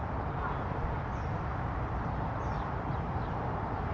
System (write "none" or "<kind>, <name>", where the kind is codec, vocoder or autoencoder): none